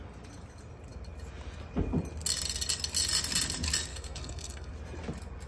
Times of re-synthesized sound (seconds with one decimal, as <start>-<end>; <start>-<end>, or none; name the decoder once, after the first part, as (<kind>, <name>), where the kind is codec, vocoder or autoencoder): 3.9-4.7 (codec, SNAC)

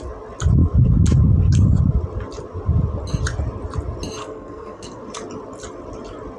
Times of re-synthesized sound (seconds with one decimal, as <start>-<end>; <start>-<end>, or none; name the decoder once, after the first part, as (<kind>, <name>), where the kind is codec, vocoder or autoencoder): 4.2-5.0 (codec, SNAC)